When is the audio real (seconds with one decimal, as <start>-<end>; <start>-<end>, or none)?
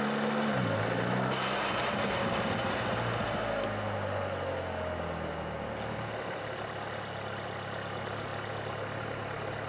0.0-9.7